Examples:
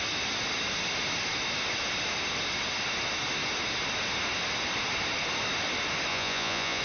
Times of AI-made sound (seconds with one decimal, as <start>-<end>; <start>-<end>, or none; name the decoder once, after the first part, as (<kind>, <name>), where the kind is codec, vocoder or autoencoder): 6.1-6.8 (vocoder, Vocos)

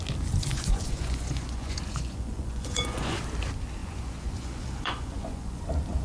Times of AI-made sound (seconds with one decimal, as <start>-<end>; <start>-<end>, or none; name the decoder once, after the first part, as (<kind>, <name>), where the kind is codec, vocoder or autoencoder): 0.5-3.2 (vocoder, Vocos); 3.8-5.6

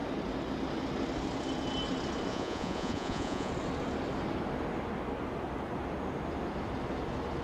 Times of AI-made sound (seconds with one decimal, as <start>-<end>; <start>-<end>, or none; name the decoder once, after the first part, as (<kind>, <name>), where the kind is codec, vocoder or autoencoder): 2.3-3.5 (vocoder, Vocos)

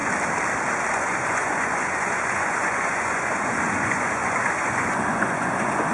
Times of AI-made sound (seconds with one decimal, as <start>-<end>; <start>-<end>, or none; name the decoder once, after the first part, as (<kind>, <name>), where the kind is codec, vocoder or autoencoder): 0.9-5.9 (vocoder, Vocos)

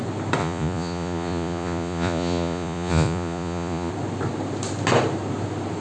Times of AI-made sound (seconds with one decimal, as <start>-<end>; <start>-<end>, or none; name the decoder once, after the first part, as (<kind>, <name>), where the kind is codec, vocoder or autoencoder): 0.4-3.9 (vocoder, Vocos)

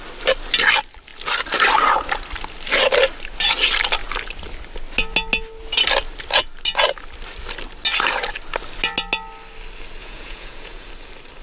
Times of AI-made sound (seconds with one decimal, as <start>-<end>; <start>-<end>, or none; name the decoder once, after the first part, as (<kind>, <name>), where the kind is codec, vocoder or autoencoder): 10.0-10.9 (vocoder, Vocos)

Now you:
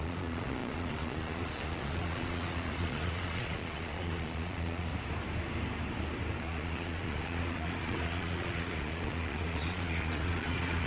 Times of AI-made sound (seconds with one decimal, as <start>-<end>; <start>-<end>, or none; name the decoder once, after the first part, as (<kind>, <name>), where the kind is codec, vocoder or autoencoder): 0.0-4.9 (vocoder, Vocos); 6.4-10.9

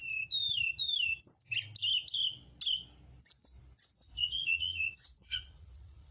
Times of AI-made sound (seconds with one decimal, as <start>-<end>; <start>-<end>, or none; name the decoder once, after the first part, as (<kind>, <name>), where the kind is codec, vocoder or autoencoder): 4.0-6.1 (vocoder, Vocos)